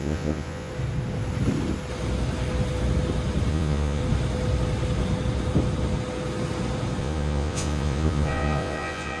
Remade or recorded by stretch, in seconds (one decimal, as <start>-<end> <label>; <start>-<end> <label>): 0.0-0.7 remade; 0.7-3.5 recorded; 3.5-4.0 remade; 4.0-7.0 recorded; 7.0-9.2 remade